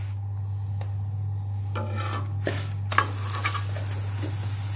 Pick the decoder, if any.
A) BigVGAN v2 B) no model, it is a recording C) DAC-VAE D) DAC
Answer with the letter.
B